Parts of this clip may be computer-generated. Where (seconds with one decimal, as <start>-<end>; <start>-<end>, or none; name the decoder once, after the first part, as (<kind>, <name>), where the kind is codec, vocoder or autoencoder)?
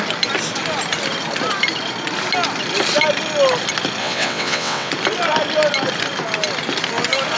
4.0-4.9 (vocoder, WaveNeXt)